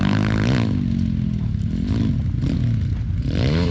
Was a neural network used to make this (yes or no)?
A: no